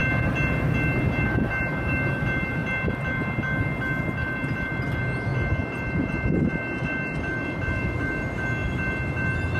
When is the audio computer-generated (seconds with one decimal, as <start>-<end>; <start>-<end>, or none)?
none